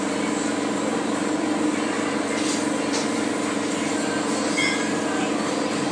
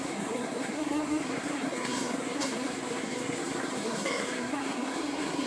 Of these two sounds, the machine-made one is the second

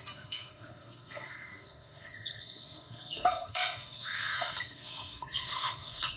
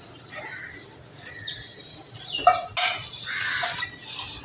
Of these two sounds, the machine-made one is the first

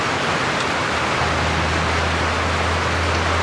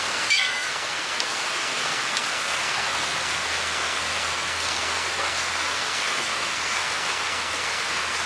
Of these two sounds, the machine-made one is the second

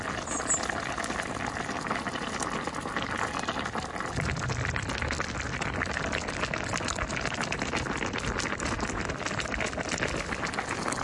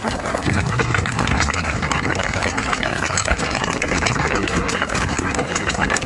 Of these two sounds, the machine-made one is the second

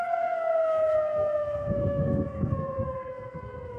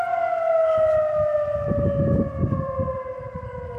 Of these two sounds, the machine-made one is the first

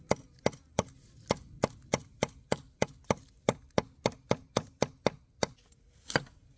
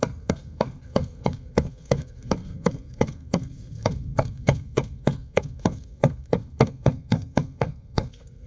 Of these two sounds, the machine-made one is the second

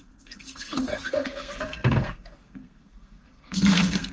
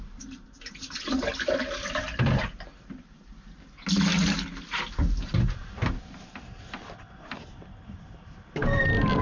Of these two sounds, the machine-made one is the first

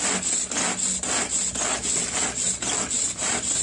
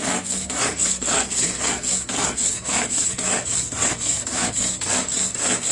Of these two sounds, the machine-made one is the second